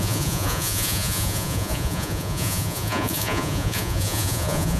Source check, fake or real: fake